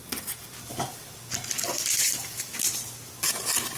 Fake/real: real